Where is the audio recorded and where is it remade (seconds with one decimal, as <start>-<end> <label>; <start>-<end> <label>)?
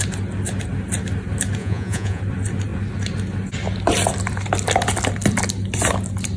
0.0-1.6 recorded; 1.6-2.2 remade; 2.2-6.4 recorded